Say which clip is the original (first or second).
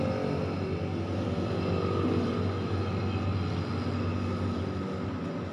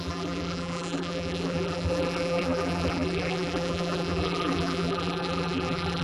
first